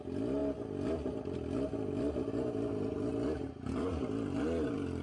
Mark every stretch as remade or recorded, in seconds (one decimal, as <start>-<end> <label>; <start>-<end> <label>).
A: 0.0-5.0 recorded